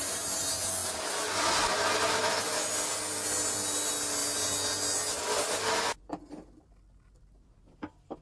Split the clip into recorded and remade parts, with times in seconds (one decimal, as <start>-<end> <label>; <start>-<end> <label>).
0.0-8.2 recorded